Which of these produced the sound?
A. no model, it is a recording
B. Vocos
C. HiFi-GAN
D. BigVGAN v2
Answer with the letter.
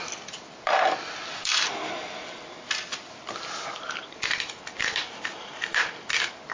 A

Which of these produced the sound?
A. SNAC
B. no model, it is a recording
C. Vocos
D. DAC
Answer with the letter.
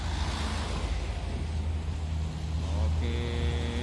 B